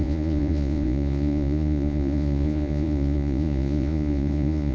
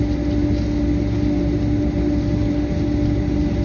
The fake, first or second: first